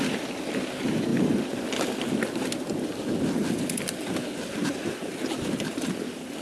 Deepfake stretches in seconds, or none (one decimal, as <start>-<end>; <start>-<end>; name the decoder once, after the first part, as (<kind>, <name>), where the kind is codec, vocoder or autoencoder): 0.0-6.4 (vocoder, BigVGAN v2)